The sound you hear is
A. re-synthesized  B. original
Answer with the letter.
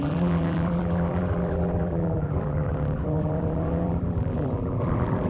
A